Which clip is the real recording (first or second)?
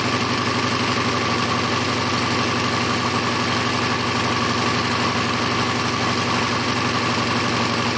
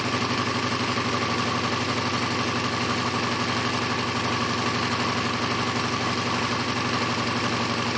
first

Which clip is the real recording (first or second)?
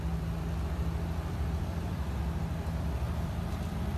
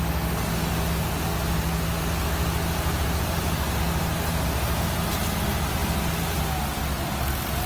second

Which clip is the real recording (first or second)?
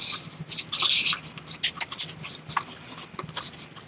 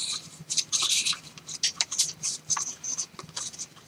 first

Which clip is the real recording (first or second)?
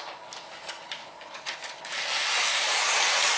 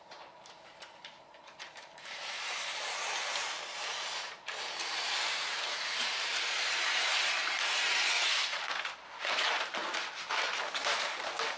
first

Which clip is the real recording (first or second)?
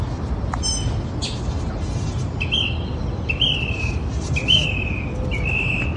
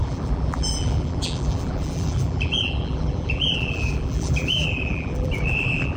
first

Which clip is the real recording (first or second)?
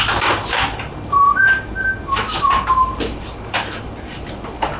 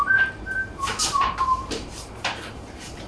first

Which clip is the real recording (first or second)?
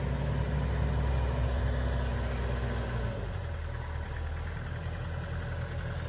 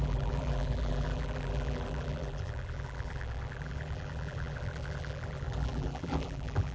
first